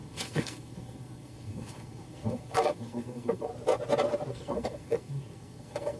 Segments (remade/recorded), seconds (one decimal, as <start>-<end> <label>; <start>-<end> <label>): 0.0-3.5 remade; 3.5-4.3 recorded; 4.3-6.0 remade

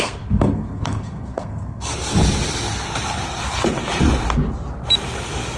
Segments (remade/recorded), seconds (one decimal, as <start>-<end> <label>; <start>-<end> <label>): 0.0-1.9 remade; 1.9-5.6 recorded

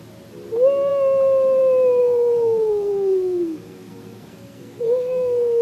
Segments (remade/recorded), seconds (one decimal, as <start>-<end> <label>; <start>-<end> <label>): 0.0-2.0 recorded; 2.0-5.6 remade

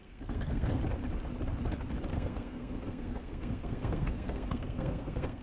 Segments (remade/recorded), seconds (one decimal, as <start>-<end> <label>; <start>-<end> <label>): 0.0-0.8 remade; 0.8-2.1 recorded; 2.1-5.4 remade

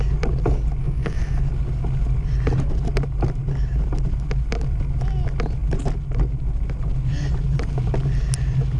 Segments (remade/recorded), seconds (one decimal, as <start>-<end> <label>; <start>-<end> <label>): 0.0-0.8 recorded; 0.8-1.4 remade; 1.4-8.8 recorded